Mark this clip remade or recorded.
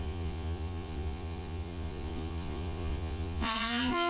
remade